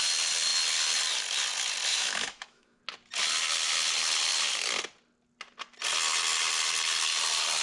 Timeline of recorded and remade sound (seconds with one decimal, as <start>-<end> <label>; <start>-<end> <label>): 0.0-1.9 recorded; 1.9-2.8 remade; 2.8-7.6 recorded